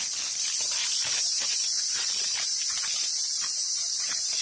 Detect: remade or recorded recorded